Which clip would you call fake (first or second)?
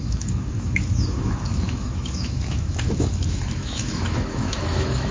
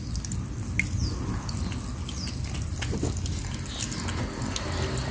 first